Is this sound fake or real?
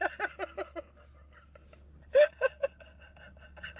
real